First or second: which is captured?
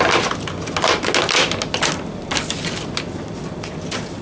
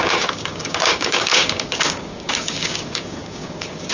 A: first